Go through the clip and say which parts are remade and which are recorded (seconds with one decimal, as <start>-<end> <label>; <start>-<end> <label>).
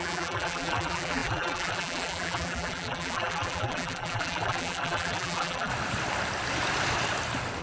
0.0-5.7 remade; 5.7-7.6 recorded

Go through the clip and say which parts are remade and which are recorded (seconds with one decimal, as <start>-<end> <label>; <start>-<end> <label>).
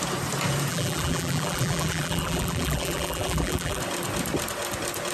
0.0-0.7 recorded; 0.7-3.8 remade; 3.8-5.1 recorded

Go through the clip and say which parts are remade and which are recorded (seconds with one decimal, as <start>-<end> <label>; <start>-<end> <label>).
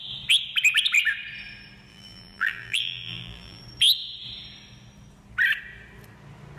0.0-1.9 recorded; 1.9-3.6 remade; 3.6-6.6 recorded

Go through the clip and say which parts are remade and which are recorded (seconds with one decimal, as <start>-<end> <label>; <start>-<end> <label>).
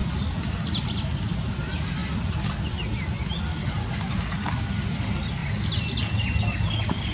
0.0-7.1 recorded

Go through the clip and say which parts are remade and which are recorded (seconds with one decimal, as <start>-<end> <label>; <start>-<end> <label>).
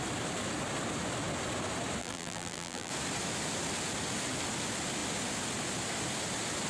0.0-2.0 recorded; 2.0-2.9 remade; 2.9-6.7 recorded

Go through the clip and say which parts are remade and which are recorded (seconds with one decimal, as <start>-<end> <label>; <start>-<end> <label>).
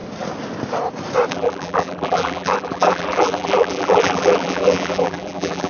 0.0-1.3 recorded; 1.3-5.7 remade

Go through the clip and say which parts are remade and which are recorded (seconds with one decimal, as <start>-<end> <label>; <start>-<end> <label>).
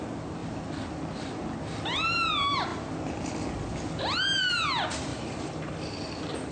0.0-5.1 recorded; 5.1-5.9 remade; 5.9-6.5 recorded